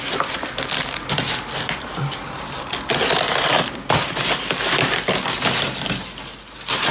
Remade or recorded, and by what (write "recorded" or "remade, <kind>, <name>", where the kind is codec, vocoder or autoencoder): recorded